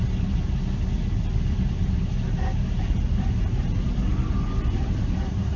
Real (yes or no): yes